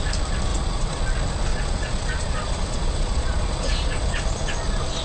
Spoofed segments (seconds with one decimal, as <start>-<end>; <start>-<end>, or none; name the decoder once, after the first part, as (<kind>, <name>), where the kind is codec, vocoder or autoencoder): 0.5-1.0 (vocoder, Vocos); 1.5-4.5